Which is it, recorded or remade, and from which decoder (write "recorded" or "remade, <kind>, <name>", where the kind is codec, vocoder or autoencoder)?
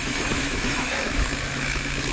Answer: remade, autoencoder, DAC-VAE